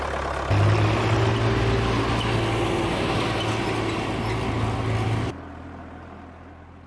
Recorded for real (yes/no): yes